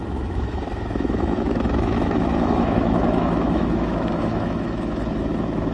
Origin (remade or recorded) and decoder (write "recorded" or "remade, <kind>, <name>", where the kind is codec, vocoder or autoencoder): remade, autoencoder, DAC-VAE